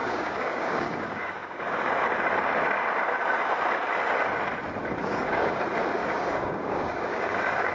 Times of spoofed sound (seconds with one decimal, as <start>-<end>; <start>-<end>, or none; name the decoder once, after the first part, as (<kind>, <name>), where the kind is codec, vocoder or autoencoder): 0.0-1.9 (codec, DAC); 5.0-5.6; 6.0-7.7